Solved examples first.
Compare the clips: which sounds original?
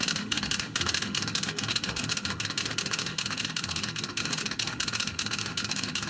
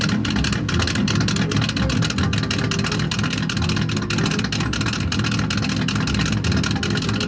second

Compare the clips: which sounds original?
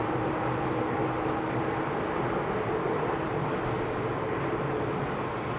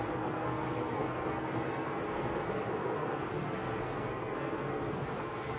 first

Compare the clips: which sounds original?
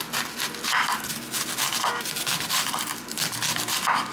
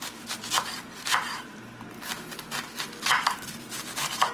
first